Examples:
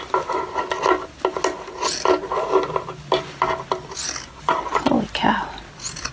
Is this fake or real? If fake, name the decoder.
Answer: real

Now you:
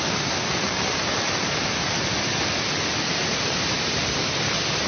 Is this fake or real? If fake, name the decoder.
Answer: real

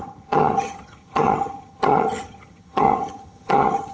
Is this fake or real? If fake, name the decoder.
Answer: fake, vocoder, HiFi-GAN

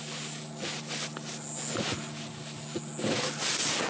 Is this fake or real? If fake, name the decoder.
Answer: real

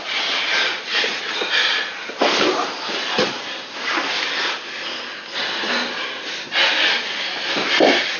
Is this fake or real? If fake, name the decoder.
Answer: real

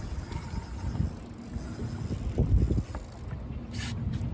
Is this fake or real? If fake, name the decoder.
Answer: real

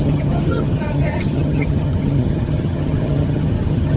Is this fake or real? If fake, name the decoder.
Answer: fake, vocoder, HiFi-GAN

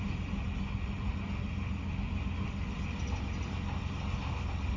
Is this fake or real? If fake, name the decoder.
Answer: real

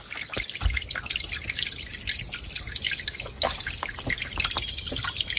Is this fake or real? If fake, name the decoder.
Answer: real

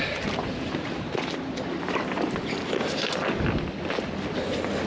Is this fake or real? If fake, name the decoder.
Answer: real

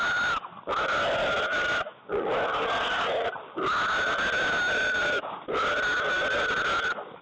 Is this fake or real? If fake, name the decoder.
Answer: real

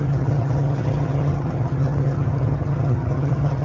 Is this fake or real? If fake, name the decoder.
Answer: fake, vocoder, HiFi-GAN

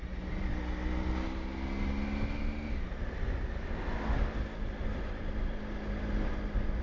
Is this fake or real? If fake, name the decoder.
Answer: real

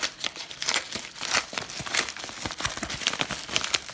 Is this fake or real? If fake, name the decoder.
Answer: real